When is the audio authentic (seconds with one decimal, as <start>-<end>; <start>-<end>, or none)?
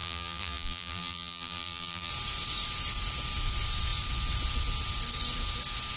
2.1-6.0